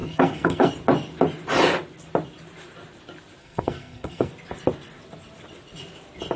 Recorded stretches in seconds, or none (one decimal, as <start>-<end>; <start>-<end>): 0.7-3.4; 4.3-6.4